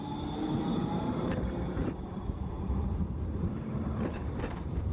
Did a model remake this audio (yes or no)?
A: yes